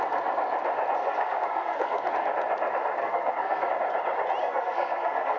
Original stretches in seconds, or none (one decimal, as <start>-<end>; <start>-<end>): 0.0-1.0; 2.1-3.0; 3.7-4.4